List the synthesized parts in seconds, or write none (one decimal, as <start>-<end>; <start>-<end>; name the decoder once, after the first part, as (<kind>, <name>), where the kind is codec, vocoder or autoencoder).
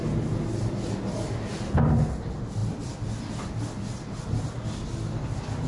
none